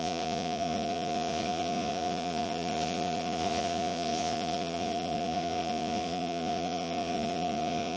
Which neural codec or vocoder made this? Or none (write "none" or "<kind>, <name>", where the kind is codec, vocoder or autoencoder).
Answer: vocoder, Vocos